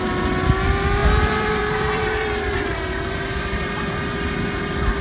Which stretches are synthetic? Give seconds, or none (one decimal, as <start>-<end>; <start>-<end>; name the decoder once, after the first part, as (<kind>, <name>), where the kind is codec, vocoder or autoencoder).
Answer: 1.0-4.0 (vocoder, BigVGAN v2)